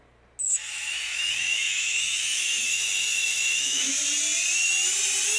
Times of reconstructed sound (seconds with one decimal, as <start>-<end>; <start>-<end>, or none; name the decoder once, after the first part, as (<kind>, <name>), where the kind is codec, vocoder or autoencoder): 0.7-3.9 (autoencoder, DAC-VAE)